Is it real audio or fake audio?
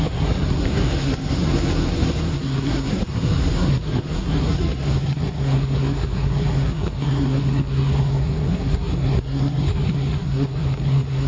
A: fake